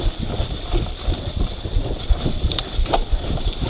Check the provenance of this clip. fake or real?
real